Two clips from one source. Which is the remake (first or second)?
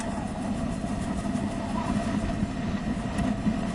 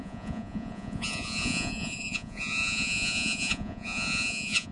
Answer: second